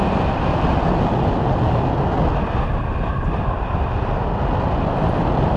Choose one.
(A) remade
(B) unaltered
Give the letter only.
B